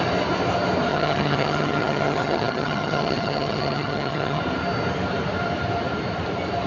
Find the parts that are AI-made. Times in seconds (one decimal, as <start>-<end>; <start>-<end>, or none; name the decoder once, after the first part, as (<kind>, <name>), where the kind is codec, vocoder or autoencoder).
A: 0.9-4.4 (vocoder, HiFi-GAN)